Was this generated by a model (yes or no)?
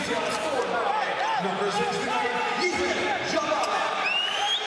no